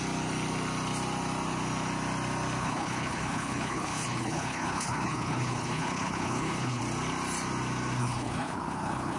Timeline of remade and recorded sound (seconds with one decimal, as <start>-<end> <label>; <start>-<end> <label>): 0.0-2.6 recorded; 2.6-6.8 remade; 6.8-8.0 recorded; 8.0-9.2 remade